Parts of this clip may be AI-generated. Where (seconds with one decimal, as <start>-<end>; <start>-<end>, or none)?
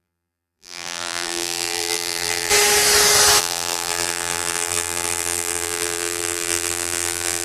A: 0.0-2.5; 3.4-7.4